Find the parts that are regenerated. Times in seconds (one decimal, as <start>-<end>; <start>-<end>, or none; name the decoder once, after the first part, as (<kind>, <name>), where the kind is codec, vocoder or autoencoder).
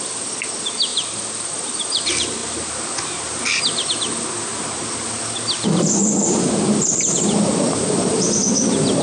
none